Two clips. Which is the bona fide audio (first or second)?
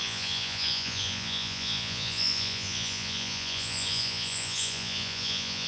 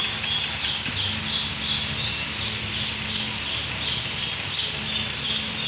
second